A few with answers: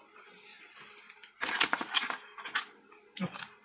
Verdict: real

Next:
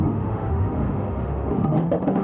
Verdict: fake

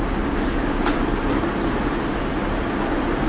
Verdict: real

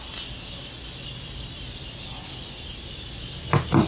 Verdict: real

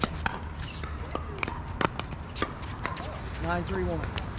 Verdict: real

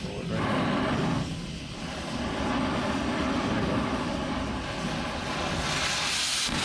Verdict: real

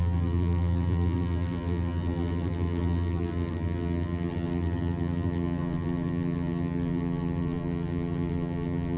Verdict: fake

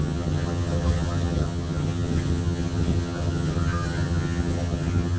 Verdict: fake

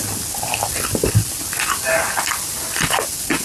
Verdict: real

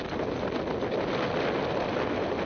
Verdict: real